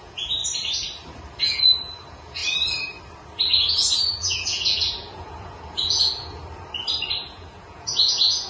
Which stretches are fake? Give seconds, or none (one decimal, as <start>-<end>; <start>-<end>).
0.0-0.4; 1.4-2.4; 3.7-6.4; 7.2-8.5